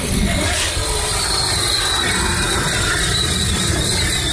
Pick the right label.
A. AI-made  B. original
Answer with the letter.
B